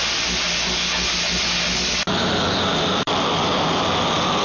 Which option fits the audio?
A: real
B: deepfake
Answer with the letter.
A